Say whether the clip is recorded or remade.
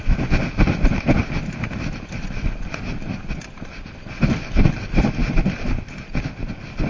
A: recorded